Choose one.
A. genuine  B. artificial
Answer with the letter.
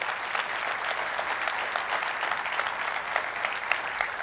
A